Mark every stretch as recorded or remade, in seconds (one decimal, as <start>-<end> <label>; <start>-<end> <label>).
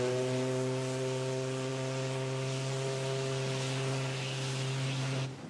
0.0-5.5 recorded